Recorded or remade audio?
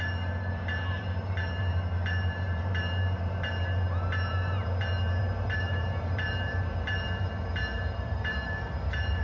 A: remade